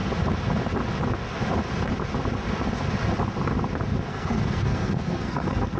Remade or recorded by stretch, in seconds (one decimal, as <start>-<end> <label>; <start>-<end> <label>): 0.0-4.1 recorded; 4.1-5.8 remade